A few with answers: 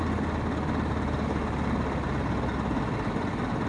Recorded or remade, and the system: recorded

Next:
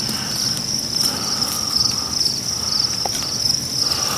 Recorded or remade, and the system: recorded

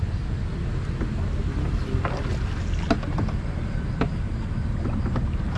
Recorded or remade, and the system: recorded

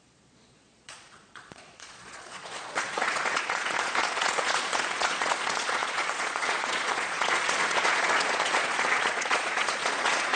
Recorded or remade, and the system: remade, vocoder, Vocos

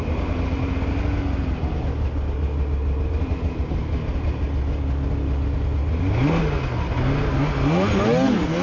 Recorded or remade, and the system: recorded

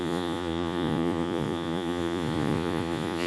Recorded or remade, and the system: remade, vocoder, Vocos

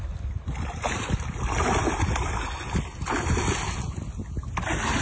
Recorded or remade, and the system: recorded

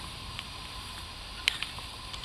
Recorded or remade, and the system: recorded